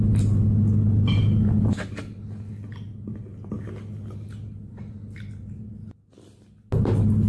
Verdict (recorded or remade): recorded